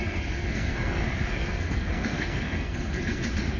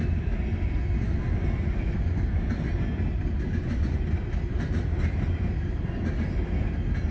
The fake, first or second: first